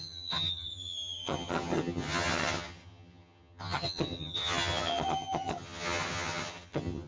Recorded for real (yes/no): no